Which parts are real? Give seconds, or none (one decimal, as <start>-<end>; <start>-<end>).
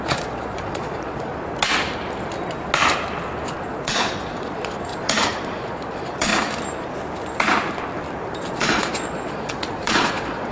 1.3-3.6; 4.9-5.6; 6.3-8.5